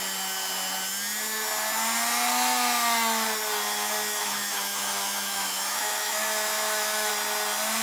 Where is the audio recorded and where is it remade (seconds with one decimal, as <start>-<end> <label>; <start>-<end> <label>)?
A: 0.0-4.2 recorded; 4.2-7.1 remade; 7.1-7.8 recorded